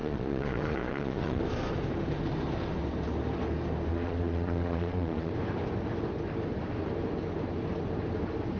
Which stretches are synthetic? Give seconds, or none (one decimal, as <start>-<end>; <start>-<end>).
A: 0.0-1.4; 3.9-5.3